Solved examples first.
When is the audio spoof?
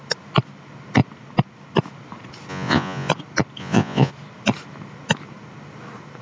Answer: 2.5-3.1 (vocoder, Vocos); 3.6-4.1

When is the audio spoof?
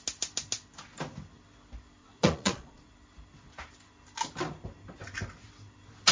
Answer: 2.0-2.9 (vocoder, Vocos)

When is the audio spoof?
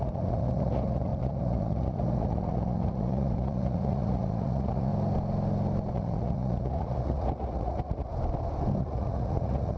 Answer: 0.0-4.9 (vocoder, Vocos); 5.9-8.1; 8.8-9.8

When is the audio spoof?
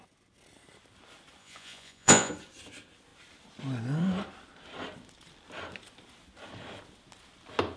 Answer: 1.4-2.3 (vocoder, Vocos)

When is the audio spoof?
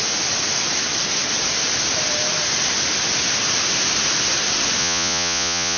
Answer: 4.8-5.8 (vocoder, Vocos)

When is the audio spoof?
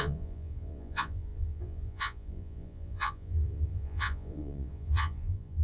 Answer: 0.0-5.6 (vocoder, Vocos)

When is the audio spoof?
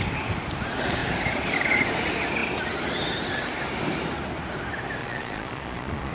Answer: 5.0-6.1 (vocoder, Vocos)